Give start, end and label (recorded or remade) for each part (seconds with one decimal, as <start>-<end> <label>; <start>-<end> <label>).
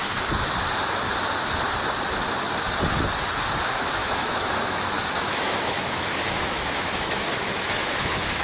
0.0-4.0 recorded; 4.0-7.3 remade; 7.3-7.8 recorded; 7.8-8.4 remade